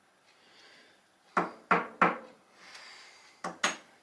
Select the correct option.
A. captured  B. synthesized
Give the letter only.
A